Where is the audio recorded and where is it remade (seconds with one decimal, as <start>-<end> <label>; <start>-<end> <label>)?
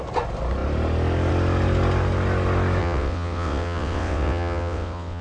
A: 0.0-2.8 recorded; 2.8-5.2 remade